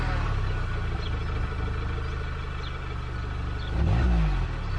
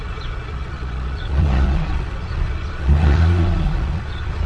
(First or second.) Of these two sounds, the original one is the first